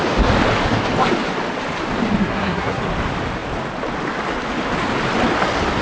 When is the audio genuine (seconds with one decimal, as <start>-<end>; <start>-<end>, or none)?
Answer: 0.0-2.2; 2.8-5.8